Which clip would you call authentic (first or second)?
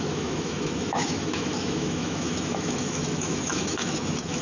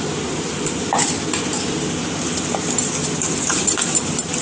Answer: second